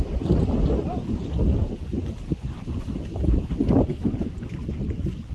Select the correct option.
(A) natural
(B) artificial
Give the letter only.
A